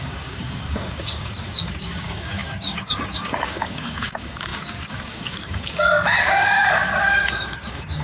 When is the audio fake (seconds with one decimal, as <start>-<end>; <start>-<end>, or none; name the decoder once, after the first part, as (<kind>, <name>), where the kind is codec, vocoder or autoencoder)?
0.0-8.0 (codec, DAC)